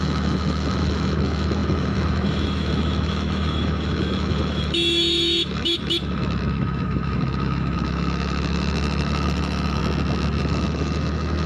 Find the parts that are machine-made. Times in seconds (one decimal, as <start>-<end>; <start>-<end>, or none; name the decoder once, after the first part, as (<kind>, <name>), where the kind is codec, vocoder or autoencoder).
0.0-9.8 (autoencoder, DAC-VAE); 10.4-11.5